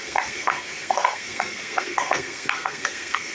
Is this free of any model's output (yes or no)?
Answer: no